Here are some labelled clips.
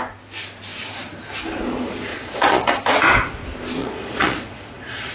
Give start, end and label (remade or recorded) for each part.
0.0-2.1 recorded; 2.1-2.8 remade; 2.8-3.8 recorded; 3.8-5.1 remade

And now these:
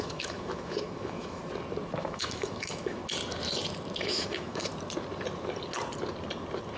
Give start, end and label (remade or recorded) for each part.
0.0-1.4 remade; 1.4-2.0 recorded; 2.0-3.0 remade; 3.0-4.0 recorded; 4.0-4.7 remade; 4.7-6.8 recorded

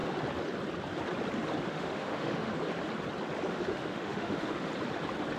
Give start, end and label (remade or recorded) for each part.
0.0-1.6 recorded; 1.6-2.5 remade; 2.5-3.5 recorded; 3.5-4.7 remade; 4.7-5.4 recorded

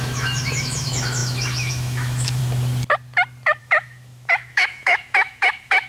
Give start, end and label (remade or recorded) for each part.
0.0-2.4 remade; 2.4-3.6 recorded; 3.6-5.9 remade